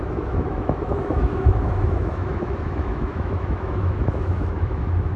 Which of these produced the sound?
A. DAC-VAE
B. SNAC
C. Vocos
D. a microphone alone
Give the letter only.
A